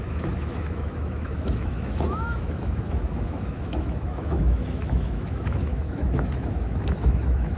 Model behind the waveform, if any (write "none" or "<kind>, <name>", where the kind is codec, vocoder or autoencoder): autoencoder, DAC-VAE